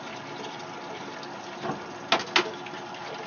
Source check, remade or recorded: recorded